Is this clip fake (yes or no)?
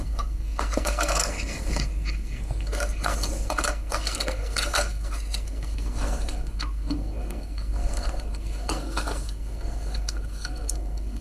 yes